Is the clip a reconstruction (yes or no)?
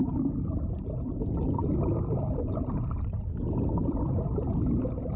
no